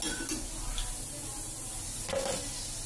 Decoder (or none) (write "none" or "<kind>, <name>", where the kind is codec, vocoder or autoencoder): none